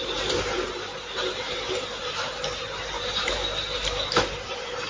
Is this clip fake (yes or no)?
yes